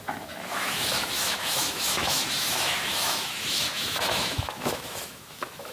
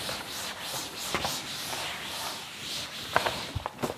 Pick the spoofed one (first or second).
first